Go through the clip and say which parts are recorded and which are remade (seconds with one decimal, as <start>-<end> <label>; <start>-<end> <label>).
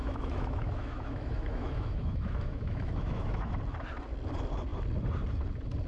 0.0-3.5 remade; 3.5-5.9 recorded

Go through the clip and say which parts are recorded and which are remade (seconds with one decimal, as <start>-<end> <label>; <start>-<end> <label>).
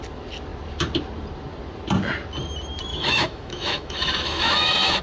0.0-2.9 recorded; 2.9-5.0 remade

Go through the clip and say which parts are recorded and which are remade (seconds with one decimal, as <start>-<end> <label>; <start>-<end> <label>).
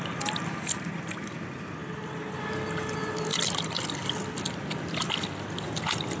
0.0-6.2 recorded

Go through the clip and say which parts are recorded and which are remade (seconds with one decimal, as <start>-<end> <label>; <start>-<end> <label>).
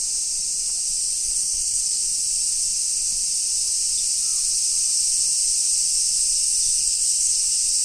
0.0-1.2 recorded; 1.2-2.0 remade; 2.0-6.8 recorded; 6.8-7.3 remade; 7.3-7.8 recorded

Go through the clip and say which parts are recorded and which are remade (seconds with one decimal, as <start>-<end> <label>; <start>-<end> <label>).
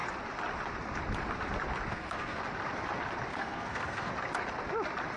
0.0-1.9 recorded; 1.9-2.4 remade; 2.4-3.3 recorded; 3.3-4.1 remade; 4.1-5.2 recorded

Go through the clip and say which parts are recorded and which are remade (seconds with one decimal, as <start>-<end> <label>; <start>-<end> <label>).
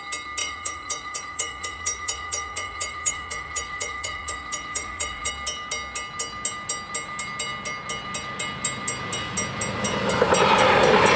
0.0-0.4 recorded; 0.4-5.3 remade; 5.3-11.2 recorded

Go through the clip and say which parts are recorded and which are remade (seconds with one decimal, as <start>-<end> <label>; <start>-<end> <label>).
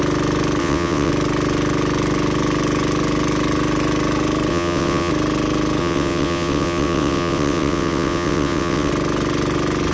0.0-0.6 recorded; 0.6-1.1 remade; 1.1-4.5 recorded; 4.5-5.1 remade; 5.1-5.8 recorded; 5.8-8.9 remade; 8.9-9.9 recorded